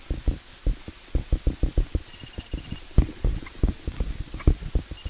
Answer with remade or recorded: recorded